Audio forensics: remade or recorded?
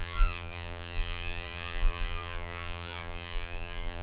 remade